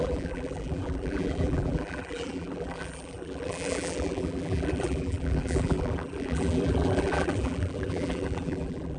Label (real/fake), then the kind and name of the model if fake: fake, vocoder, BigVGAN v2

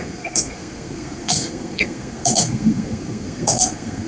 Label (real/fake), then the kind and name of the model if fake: fake, codec, SNAC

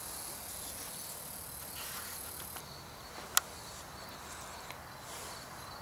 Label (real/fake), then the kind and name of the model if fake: real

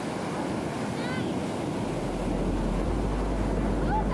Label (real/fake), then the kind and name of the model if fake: real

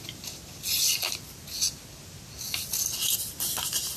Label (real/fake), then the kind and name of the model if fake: real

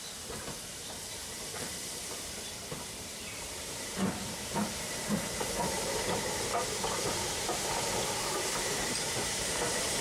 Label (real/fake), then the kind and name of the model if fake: fake, vocoder, BigVGAN v2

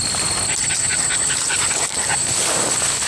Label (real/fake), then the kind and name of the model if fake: real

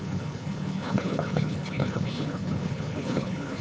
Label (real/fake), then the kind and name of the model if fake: fake, codec, HILCodec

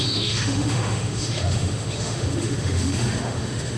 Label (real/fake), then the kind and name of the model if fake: fake, autoencoder, DAC-VAE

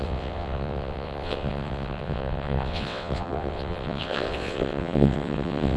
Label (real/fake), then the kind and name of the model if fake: fake, vocoder, WaveNeXt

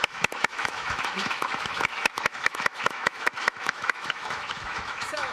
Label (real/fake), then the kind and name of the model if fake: fake, autoencoder, DAC-VAE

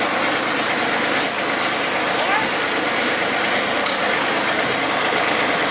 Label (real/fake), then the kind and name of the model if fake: real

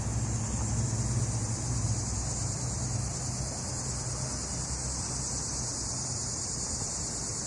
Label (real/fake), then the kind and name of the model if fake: real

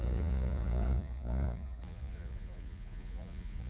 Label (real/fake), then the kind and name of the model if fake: fake, vocoder, Vocos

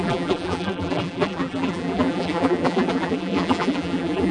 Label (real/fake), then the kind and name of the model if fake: fake, vocoder, BigVGAN v2